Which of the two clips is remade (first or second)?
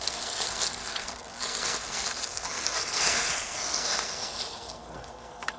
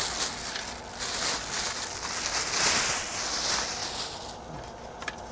first